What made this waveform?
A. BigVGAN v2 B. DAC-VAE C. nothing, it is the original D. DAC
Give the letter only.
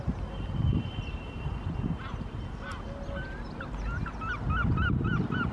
C